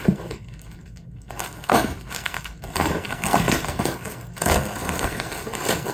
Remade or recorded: remade